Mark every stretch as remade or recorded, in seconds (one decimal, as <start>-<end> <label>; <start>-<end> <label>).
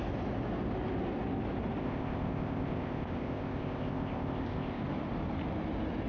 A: 0.0-1.8 recorded; 1.8-4.8 remade; 4.8-6.1 recorded